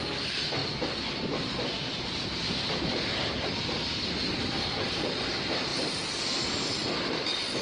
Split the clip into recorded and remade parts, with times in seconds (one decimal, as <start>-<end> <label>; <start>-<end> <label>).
0.0-7.6 recorded